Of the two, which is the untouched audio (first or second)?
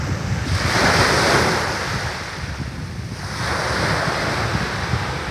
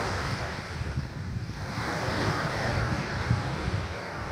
first